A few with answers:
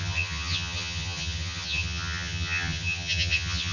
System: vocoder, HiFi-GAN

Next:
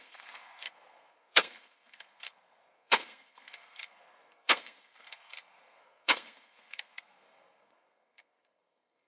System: codec, SNAC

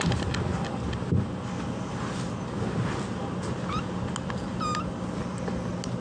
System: none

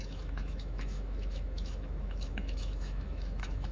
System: autoencoder, DAC-VAE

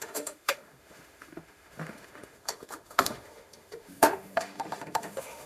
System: autoencoder, DAC-VAE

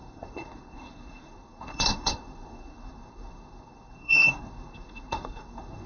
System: codec, SNAC